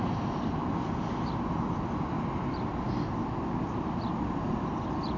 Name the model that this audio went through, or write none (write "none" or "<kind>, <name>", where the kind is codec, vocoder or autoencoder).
none